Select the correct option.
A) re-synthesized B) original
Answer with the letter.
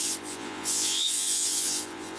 A